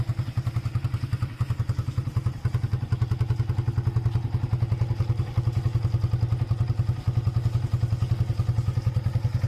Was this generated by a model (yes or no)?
no